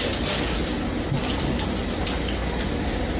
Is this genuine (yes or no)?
yes